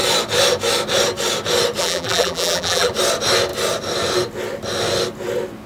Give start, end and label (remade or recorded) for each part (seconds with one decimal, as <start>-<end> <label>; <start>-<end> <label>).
0.0-1.8 recorded; 1.8-2.9 remade; 2.9-5.7 recorded